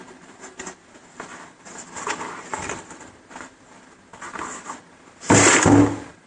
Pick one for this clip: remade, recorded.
recorded